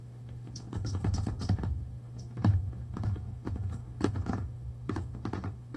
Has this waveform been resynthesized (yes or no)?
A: yes